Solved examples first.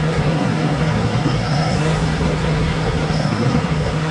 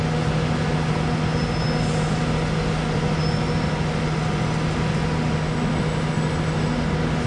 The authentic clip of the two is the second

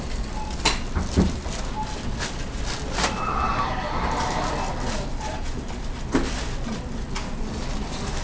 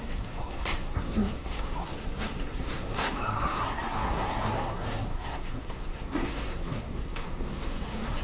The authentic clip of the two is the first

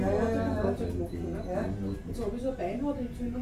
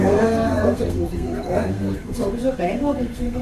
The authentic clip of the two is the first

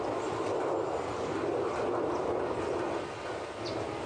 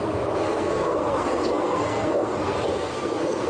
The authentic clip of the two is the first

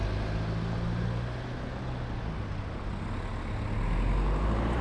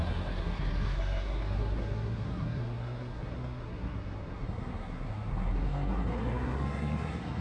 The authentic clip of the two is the first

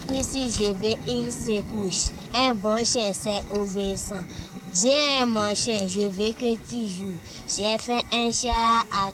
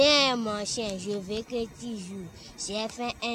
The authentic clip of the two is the second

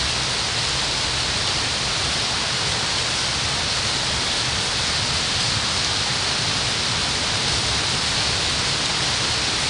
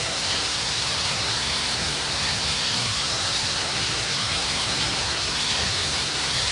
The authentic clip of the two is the first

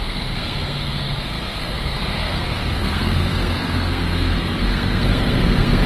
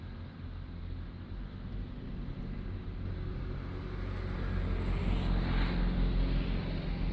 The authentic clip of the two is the second